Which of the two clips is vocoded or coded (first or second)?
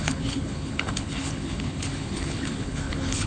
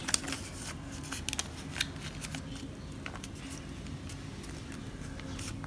first